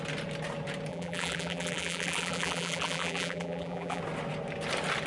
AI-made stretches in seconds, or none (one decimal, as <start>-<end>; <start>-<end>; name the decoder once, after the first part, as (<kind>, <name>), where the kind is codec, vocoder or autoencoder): 0.9-4.0 (vocoder, BigVGAN v2)